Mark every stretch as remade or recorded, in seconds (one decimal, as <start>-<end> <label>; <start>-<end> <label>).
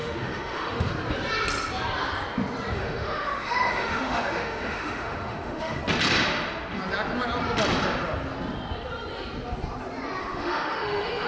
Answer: 0.0-0.9 remade; 0.9-2.7 recorded; 2.7-5.8 remade; 5.8-10.2 recorded; 10.2-11.3 remade